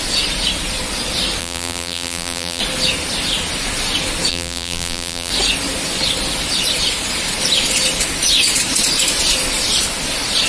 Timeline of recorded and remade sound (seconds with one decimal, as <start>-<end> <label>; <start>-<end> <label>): 0.0-1.4 recorded; 1.4-2.6 remade; 2.6-4.3 recorded; 4.3-5.3 remade; 5.3-10.5 recorded